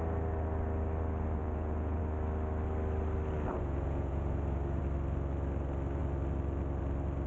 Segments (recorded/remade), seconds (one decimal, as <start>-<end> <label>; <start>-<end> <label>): 0.0-1.4 recorded; 1.4-2.0 remade; 2.0-3.5 recorded; 3.5-4.8 remade; 4.8-7.3 recorded